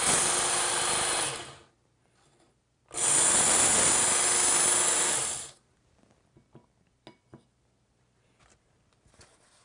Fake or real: real